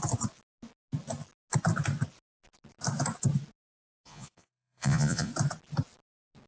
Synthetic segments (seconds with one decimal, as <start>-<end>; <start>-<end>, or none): 3.8-5.3